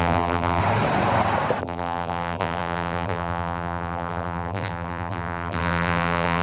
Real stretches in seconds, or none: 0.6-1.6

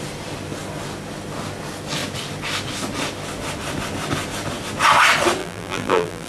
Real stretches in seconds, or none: 0.0-5.4

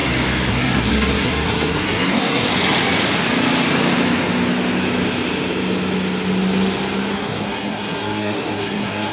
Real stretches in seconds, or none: 0.0-0.5; 2.5-7.1